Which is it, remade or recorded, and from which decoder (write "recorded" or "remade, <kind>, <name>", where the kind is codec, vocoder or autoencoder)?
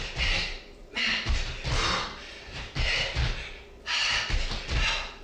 recorded